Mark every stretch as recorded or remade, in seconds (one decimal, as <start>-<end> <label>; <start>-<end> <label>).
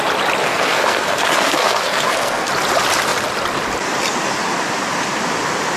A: 0.0-0.4 recorded; 0.4-2.5 remade; 2.5-5.8 recorded